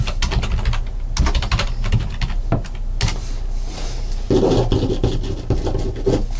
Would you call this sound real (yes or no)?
yes